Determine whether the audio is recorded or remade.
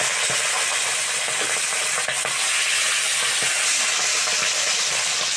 recorded